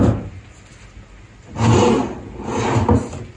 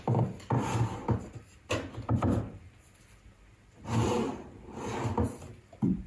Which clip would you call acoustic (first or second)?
first